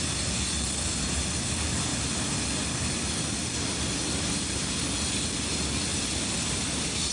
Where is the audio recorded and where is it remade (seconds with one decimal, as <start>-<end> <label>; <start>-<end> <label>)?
0.0-1.9 recorded; 1.9-3.0 remade; 3.0-7.1 recorded